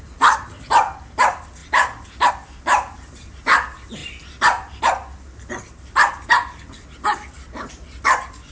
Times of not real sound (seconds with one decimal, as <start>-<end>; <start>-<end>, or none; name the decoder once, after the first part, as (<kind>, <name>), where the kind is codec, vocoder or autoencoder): none